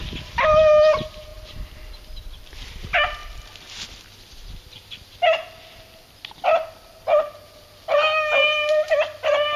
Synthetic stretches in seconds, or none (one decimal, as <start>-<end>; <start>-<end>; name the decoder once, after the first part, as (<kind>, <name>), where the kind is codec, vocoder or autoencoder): none